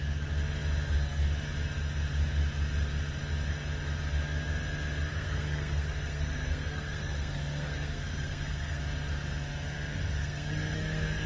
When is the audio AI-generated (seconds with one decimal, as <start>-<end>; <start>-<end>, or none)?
5.1-8.8; 10.2-11.3